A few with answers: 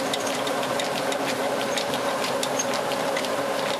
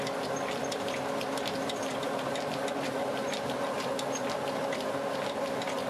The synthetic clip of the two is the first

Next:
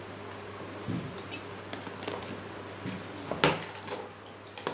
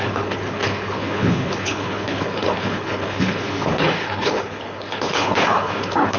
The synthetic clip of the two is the second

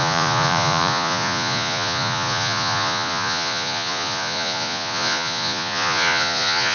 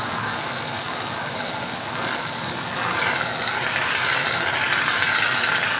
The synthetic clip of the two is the first